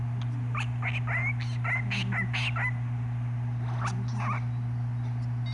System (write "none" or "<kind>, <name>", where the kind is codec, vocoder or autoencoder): none